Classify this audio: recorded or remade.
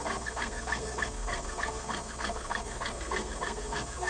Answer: remade